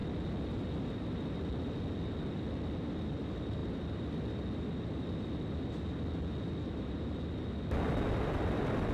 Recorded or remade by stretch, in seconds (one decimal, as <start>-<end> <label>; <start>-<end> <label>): 0.0-8.9 recorded